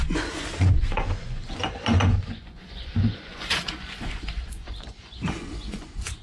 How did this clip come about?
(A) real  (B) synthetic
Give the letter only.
B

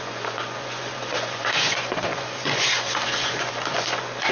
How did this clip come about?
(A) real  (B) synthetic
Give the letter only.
B